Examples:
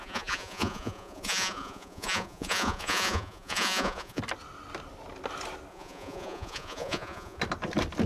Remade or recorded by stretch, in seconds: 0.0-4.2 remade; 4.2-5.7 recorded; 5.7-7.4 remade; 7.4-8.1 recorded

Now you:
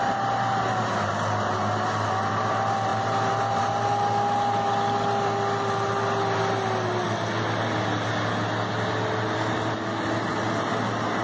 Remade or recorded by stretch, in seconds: 0.0-11.2 recorded

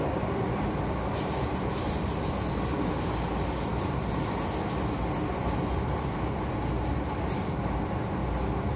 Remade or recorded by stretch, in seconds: 0.0-8.8 recorded

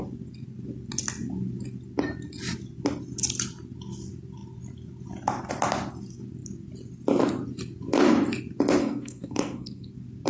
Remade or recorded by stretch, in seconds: 0.0-8.8 recorded; 8.8-9.9 remade; 9.9-10.3 recorded

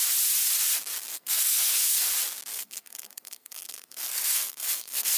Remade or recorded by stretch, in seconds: 0.0-1.1 recorded; 1.1-2.1 remade; 2.1-2.5 recorded; 2.5-5.2 remade

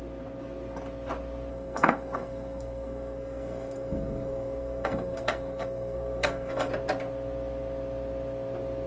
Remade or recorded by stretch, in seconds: 0.0-1.5 recorded; 1.5-6.7 remade; 6.7-8.9 recorded

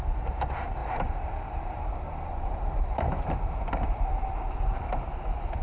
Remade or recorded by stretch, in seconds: 0.0-0.8 recorded; 0.8-4.1 remade; 4.1-5.6 recorded

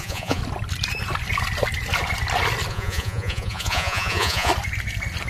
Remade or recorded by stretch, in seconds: 0.0-0.4 remade; 0.4-2.7 recorded; 2.7-4.5 remade; 4.5-5.3 recorded